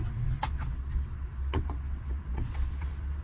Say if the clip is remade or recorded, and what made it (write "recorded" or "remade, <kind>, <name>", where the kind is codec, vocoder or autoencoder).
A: remade, vocoder, WaveNeXt